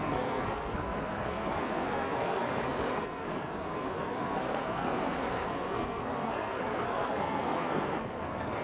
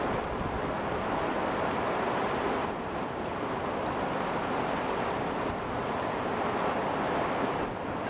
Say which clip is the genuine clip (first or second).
second